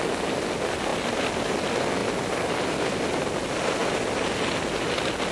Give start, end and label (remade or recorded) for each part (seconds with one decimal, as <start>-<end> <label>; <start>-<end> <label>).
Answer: 0.0-2.0 recorded; 2.0-2.6 remade; 2.6-5.3 recorded